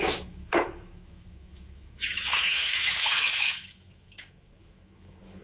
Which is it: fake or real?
fake